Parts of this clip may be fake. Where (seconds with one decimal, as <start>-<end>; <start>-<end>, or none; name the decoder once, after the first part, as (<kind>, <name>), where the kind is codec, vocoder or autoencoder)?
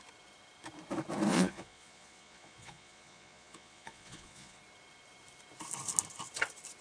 1.3-4.6 (vocoder, Vocos)